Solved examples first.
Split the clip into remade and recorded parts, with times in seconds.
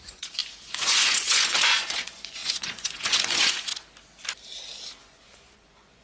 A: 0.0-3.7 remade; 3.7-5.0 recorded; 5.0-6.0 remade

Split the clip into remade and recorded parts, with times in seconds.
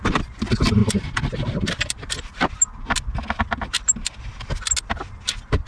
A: 0.0-5.7 recorded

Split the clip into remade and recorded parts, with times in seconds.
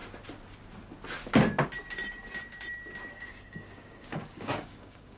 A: 0.0-3.1 recorded; 3.1-5.2 remade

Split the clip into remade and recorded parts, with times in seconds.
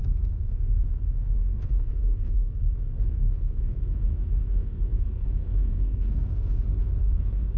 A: 0.0-7.6 remade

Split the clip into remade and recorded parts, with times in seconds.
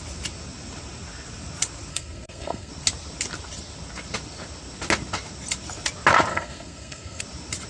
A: 0.0-1.9 recorded; 1.9-2.7 remade; 2.7-6.3 recorded; 6.3-7.2 remade; 7.2-7.7 recorded